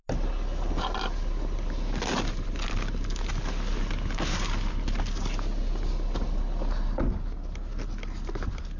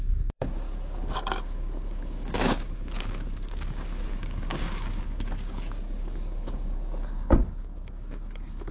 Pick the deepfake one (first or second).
second